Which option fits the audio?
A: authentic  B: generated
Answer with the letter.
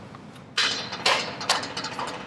A